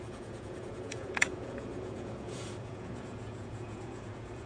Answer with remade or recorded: remade